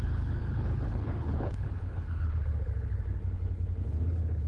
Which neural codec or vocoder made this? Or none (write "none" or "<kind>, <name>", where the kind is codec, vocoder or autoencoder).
codec, HILCodec